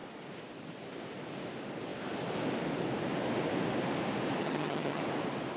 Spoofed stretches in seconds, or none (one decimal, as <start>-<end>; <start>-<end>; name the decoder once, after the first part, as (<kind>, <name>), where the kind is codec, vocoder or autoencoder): 4.4-5.0 (vocoder, HiFi-GAN)